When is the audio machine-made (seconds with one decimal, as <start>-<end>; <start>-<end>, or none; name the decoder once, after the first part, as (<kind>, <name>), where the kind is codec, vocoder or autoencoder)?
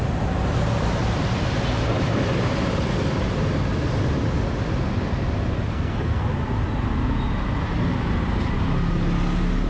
5.7-6.3 (codec, SNAC)